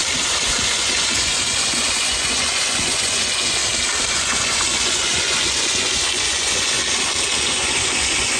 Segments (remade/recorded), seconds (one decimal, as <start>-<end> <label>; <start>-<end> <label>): 0.0-0.5 recorded; 0.5-3.6 remade; 3.6-4.1 recorded; 4.1-6.8 remade; 6.8-7.4 recorded; 7.4-8.4 remade